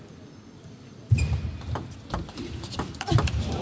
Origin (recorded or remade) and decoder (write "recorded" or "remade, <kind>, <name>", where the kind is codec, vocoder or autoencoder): remade, vocoder, BigVGAN v2